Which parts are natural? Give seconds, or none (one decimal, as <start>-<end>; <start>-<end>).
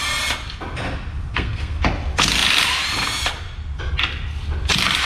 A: 0.0-1.3; 1.8-5.1